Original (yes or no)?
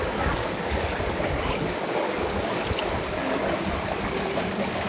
no